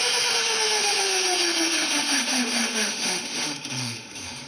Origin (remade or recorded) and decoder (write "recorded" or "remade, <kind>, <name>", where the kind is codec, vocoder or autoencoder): remade, autoencoder, DAC-VAE